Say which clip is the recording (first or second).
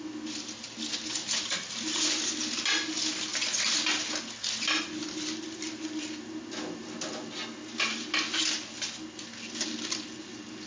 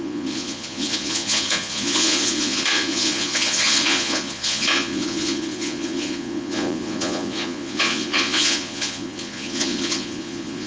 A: first